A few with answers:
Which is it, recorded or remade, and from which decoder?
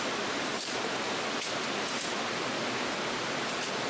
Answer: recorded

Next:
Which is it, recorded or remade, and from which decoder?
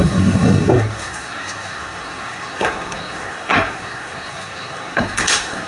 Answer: remade, codec, SNAC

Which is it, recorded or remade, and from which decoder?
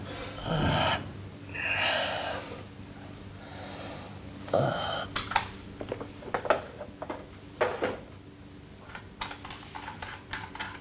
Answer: recorded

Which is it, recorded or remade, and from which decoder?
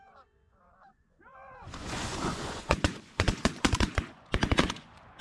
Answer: remade, vocoder, Vocos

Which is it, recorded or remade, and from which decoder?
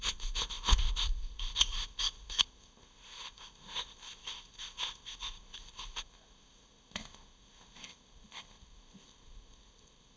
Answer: remade, codec, ZipCodec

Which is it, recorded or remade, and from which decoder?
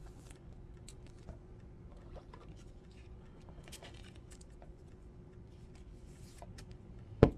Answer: remade, vocoder, Vocos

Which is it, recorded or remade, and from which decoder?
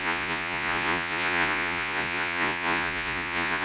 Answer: remade, vocoder, Vocos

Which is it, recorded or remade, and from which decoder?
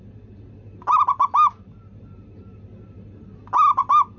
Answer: recorded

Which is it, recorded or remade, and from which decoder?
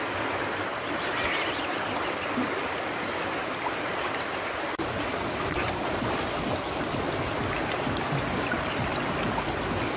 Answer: recorded